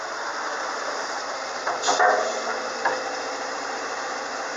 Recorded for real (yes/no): no